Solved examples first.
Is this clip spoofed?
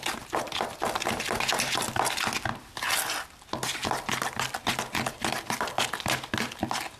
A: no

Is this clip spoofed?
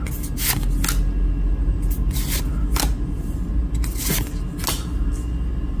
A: no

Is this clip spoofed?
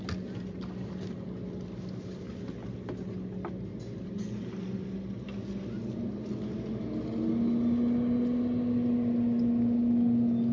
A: no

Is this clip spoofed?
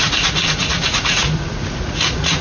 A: yes